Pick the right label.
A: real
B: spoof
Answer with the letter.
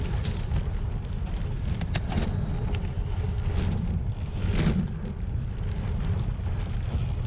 A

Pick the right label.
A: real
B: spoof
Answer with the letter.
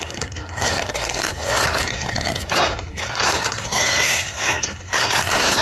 B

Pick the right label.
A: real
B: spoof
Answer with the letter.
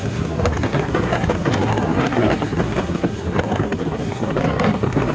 B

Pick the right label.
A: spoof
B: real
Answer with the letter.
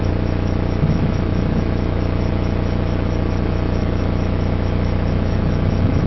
A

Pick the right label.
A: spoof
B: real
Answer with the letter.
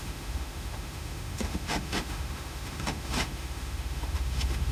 A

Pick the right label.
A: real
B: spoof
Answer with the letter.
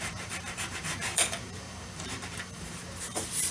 B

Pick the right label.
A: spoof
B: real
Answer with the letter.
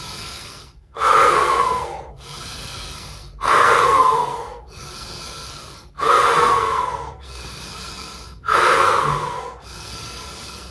A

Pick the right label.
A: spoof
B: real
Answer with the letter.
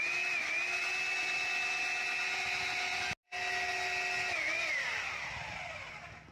B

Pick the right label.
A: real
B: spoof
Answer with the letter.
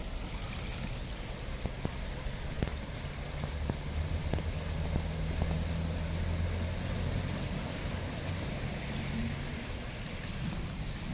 A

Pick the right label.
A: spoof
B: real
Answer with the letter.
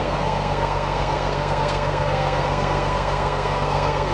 A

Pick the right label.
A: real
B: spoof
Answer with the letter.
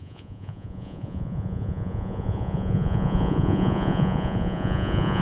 B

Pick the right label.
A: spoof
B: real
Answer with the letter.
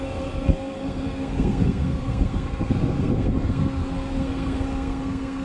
A